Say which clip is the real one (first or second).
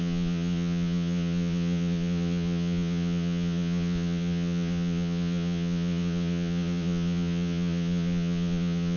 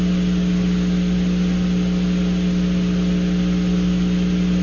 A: second